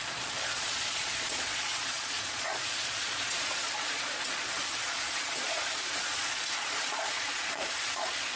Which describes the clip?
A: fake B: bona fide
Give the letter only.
A